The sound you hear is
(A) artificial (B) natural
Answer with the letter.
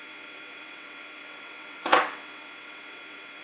A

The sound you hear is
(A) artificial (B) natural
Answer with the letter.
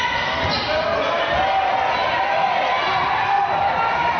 B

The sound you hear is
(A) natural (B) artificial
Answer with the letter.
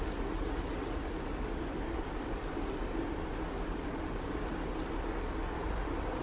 A